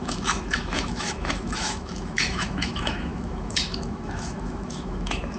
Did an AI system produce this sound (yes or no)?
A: yes